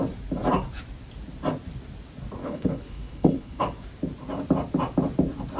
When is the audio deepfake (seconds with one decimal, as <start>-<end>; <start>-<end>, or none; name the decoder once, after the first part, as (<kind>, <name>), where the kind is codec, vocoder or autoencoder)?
2.4-3.6 (codec, HILCodec)